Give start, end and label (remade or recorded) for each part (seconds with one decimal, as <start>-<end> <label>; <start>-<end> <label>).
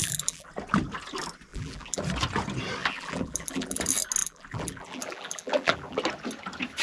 0.0-0.5 remade; 0.5-1.5 recorded; 1.5-2.0 remade; 2.0-2.8 recorded; 2.8-3.8 remade; 3.8-4.2 recorded; 4.2-6.0 remade; 6.0-6.8 recorded